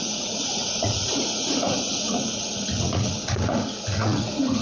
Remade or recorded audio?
remade